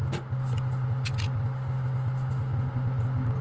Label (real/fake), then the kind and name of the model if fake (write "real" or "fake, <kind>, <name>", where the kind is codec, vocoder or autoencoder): real